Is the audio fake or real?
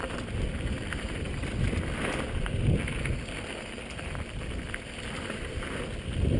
real